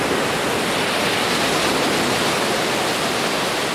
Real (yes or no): yes